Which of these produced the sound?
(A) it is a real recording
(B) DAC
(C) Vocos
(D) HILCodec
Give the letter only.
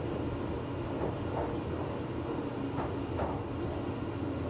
A